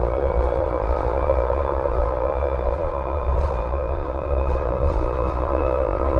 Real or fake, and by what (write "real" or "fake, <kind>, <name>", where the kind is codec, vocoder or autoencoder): fake, vocoder, Vocos